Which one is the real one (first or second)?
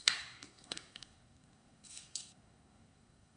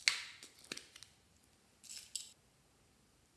second